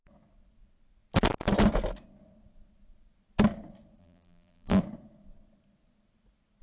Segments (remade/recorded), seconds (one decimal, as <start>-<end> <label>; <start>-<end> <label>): 0.0-4.0 recorded; 4.0-4.8 remade; 4.8-6.6 recorded